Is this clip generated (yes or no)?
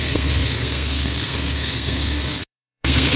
yes